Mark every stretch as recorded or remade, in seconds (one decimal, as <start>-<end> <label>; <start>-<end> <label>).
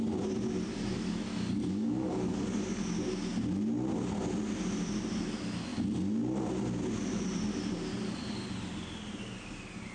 0.0-0.7 recorded; 0.7-2.8 remade; 2.8-9.9 recorded